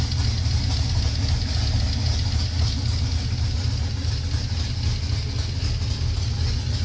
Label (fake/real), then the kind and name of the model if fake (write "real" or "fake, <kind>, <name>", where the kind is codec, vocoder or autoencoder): real